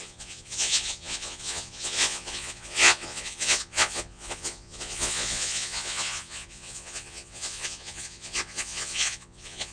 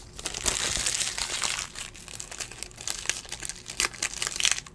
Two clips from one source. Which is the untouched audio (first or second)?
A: second